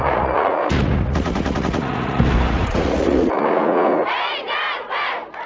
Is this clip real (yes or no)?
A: no